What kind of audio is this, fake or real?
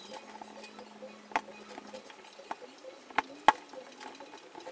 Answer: real